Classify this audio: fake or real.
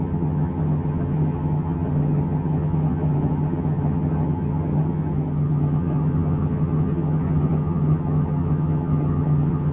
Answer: fake